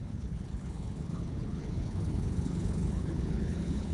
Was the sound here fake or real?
fake